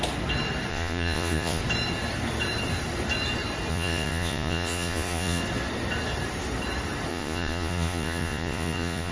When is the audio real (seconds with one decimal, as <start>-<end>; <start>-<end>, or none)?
0.0-0.7; 1.6-3.7; 5.4-7.1